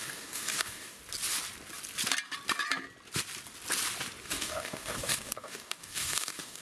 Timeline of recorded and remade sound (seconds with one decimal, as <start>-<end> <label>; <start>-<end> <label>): 0.0-1.0 remade; 1.0-4.2 recorded; 4.2-6.6 remade